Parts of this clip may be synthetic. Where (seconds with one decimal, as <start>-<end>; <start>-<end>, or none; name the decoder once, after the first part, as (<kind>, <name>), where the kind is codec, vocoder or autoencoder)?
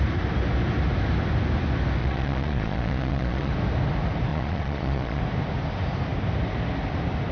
2.0-3.5 (vocoder, Vocos); 4.3-5.2